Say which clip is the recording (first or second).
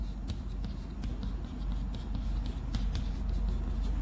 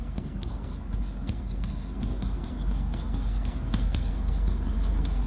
first